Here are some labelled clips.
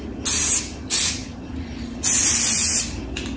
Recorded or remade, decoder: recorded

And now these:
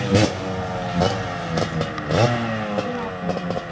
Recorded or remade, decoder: recorded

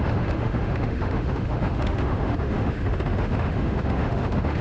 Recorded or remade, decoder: remade, autoencoder, DAC-VAE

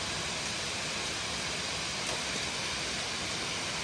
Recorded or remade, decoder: recorded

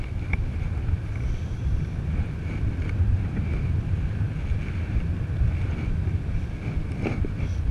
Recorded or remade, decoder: recorded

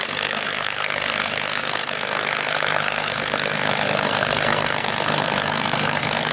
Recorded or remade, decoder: remade, codec, SNAC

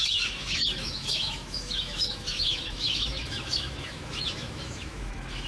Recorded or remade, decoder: remade, autoencoder, DAC-VAE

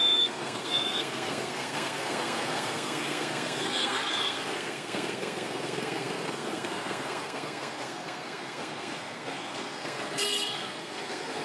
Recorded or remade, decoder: remade, codec, SNAC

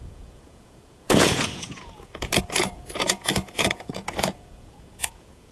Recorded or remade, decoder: remade, vocoder, Vocos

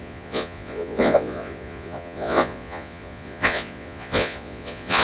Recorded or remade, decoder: remade, vocoder, Vocos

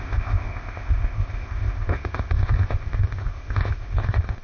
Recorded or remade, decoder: remade, codec, ZipCodec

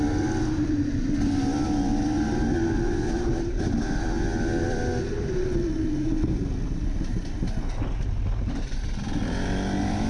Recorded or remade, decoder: recorded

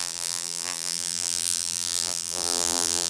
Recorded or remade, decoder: remade, vocoder, BigVGAN v2